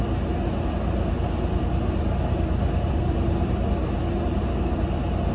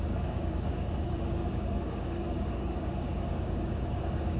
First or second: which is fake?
second